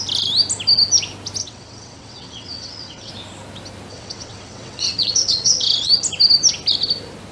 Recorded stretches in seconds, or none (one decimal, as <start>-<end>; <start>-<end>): 0.0-1.4; 3.1-3.9; 5.9-7.3